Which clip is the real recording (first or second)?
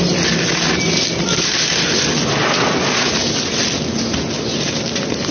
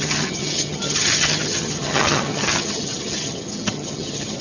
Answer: first